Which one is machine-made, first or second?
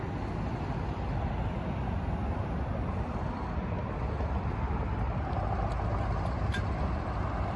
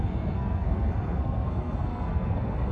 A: second